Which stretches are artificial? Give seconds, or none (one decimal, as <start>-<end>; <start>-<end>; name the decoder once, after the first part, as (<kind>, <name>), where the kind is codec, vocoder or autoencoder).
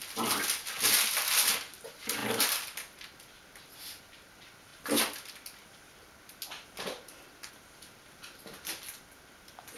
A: none